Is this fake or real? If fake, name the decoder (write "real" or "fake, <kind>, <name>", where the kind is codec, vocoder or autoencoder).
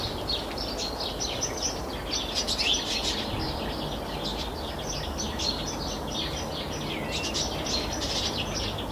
real